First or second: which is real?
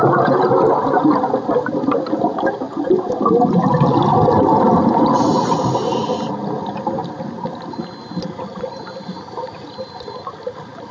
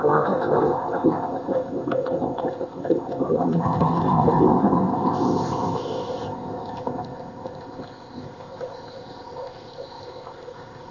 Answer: first